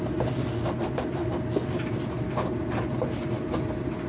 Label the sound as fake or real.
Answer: real